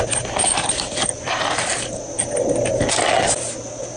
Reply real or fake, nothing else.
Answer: real